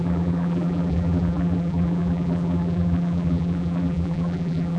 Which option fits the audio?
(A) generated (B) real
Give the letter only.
A